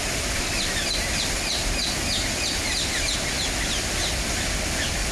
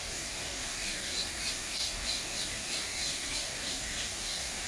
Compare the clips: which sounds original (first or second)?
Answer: first